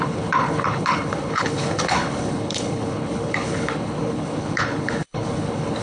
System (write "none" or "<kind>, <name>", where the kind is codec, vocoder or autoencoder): codec, HILCodec